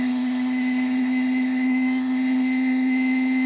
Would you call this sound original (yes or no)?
no